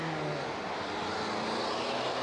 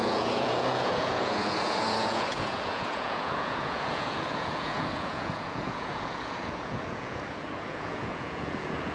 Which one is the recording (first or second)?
first